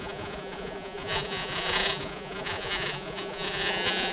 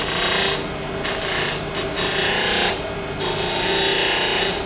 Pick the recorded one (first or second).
second